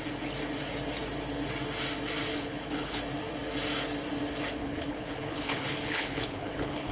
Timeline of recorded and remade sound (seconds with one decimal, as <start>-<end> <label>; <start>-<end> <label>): 0.0-2.3 recorded; 2.3-3.0 remade; 3.0-4.6 recorded; 4.6-6.9 remade